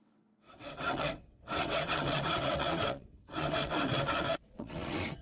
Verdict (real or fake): fake